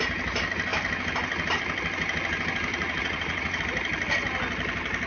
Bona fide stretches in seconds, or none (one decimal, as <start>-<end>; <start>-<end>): 0.0-2.7; 3.6-5.1

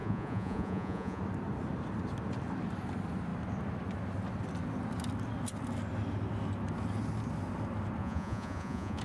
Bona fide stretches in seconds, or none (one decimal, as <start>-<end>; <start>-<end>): 1.2-8.0